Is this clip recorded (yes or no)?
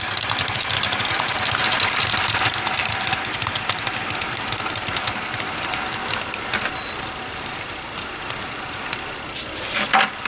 yes